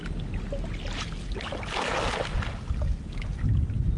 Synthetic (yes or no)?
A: no